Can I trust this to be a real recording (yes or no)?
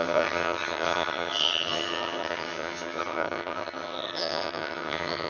no